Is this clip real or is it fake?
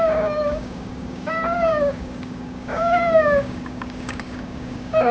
fake